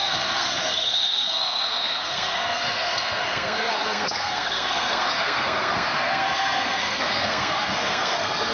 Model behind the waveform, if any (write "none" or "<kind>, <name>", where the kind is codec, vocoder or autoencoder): codec, SNAC